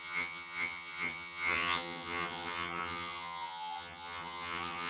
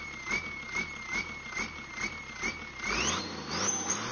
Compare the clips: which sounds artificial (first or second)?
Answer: first